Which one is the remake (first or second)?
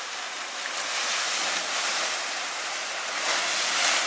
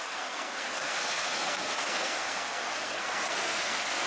second